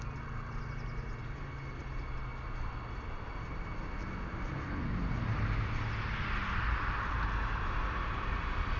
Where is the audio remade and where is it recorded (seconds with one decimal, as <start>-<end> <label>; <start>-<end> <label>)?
0.0-8.8 recorded